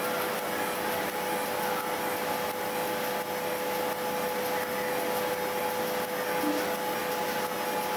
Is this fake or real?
real